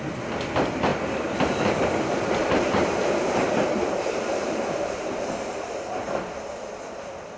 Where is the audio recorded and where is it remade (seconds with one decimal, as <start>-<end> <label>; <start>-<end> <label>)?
0.0-2.4 recorded; 2.4-5.8 remade; 5.8-7.4 recorded